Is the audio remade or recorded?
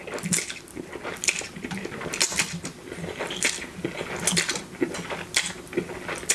recorded